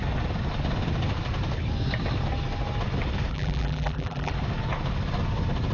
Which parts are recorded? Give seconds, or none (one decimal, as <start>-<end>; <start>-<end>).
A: 0.0-3.3; 4.3-5.7